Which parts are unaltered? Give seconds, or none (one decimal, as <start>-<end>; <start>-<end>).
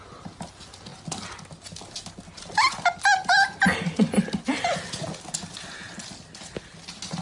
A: 0.0-7.2